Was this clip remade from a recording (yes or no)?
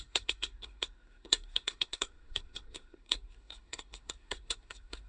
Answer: yes